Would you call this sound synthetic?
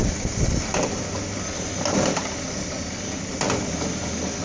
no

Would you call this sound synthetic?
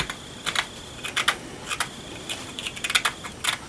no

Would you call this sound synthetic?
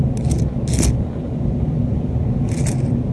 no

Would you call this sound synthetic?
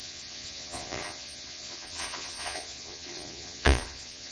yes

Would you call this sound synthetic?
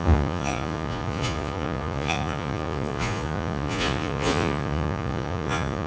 yes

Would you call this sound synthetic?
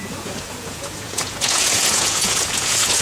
yes